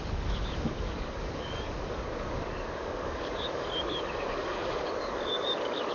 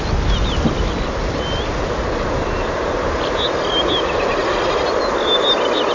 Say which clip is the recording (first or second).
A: second